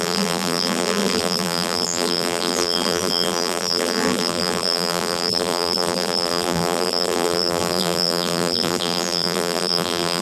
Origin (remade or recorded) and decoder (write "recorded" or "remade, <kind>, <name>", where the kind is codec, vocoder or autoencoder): remade, vocoder, BigVGAN v2